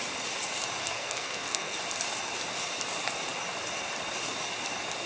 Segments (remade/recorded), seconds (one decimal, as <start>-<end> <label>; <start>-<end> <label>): 0.0-0.8 recorded; 0.8-1.8 remade; 1.8-5.1 recorded